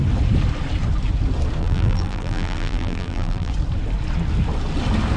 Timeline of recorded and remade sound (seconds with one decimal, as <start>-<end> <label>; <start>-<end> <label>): 0.0-1.6 recorded; 1.6-3.5 remade; 3.5-5.2 recorded